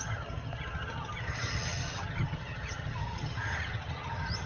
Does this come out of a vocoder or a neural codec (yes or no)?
yes